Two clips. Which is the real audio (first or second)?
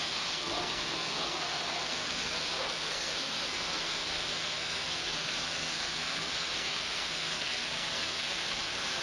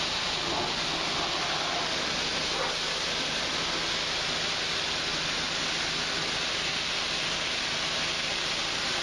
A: second